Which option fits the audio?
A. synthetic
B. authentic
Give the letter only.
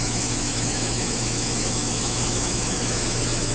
A